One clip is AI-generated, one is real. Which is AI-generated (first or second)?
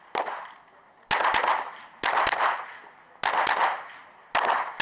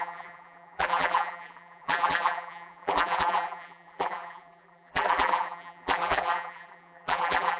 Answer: second